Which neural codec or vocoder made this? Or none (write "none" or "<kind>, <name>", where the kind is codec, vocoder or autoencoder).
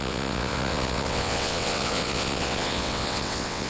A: vocoder, WaveNeXt